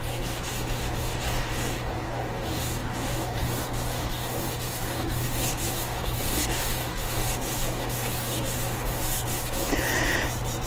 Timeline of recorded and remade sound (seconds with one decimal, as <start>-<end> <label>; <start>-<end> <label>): 0.0-9.7 remade; 9.7-10.7 recorded